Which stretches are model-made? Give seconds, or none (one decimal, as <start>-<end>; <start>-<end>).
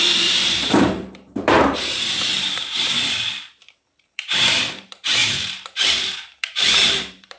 0.0-7.4